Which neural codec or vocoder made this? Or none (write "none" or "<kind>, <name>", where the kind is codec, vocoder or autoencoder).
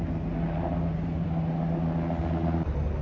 none